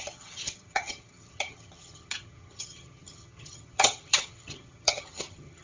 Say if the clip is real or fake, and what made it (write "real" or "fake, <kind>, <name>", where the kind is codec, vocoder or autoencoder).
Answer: fake, vocoder, HiFi-GAN